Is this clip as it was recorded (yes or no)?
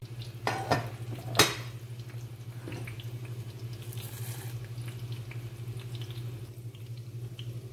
yes